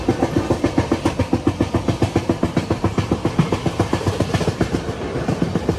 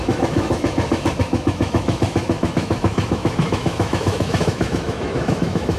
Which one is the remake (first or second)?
second